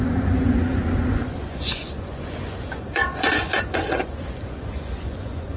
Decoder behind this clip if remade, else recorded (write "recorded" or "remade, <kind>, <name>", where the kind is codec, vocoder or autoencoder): remade, vocoder, Vocos